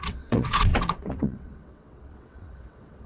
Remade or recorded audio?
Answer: remade